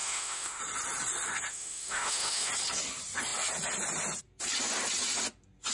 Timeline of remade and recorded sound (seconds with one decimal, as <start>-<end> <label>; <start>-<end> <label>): 0.0-0.6 remade; 0.6-1.5 recorded; 1.5-2.5 remade; 2.5-5.7 recorded